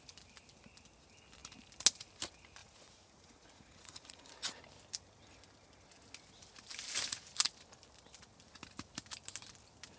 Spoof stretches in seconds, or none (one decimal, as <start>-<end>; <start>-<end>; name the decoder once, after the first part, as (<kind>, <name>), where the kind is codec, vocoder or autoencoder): 2.6-4.6 (vocoder, Vocos)